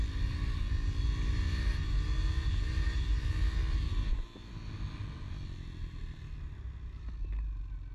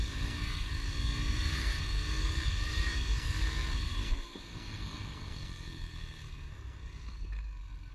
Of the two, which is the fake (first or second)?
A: second